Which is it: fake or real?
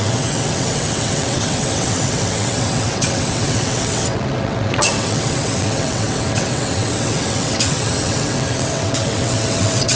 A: fake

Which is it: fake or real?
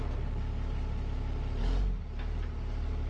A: real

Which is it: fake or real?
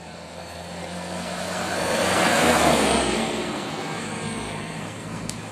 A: fake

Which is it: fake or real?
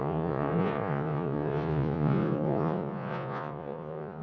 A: fake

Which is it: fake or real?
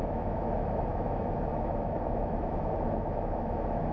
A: fake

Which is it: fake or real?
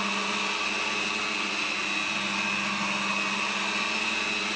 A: real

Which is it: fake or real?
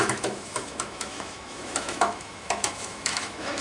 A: fake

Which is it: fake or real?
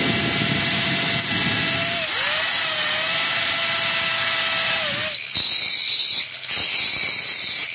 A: real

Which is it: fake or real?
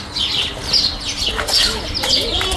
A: real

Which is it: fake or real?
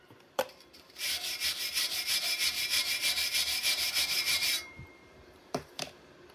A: fake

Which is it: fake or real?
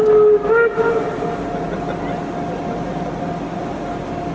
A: real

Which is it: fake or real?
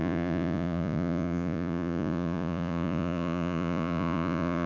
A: fake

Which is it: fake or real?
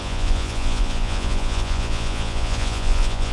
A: fake